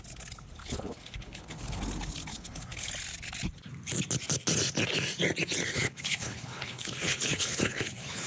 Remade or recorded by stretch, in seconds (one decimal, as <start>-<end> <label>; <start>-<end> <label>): 0.0-0.6 recorded; 0.6-1.8 remade; 1.8-2.3 recorded; 2.3-2.9 remade; 2.9-5.6 recorded; 5.6-8.3 remade